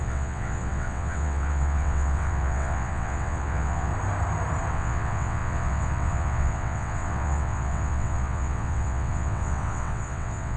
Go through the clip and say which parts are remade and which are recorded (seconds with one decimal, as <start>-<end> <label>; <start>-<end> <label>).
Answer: 0.0-3.9 remade; 3.9-4.7 recorded; 4.7-10.6 remade